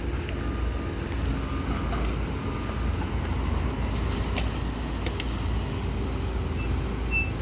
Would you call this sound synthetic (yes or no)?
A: no